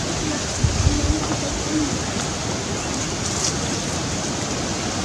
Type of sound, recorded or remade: recorded